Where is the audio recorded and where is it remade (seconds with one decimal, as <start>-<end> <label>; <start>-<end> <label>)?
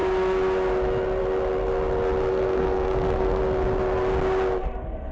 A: 0.0-2.3 recorded; 2.3-3.4 remade; 3.4-5.1 recorded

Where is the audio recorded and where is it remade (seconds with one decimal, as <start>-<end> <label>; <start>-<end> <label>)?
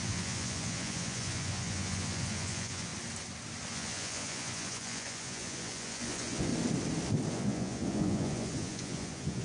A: 0.0-2.9 remade; 2.9-3.7 recorded; 3.7-6.5 remade; 6.5-7.3 recorded; 7.3-9.4 remade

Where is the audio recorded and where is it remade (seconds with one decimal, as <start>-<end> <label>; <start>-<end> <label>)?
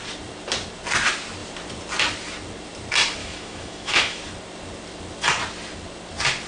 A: 0.0-3.2 recorded; 3.2-4.2 remade; 4.2-6.5 recorded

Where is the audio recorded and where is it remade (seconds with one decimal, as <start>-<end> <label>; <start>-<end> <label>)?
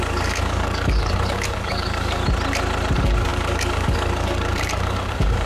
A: 0.0-2.2 remade; 2.2-2.9 recorded; 2.9-5.5 remade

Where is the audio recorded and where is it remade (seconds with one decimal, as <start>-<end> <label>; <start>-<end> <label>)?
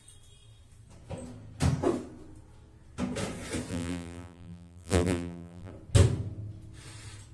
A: 0.0-3.7 recorded; 3.7-5.7 remade; 5.7-7.3 recorded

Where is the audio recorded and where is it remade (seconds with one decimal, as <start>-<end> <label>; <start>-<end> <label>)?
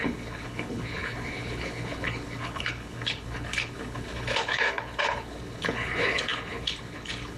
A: 0.0-7.4 remade